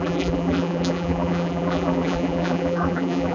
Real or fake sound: fake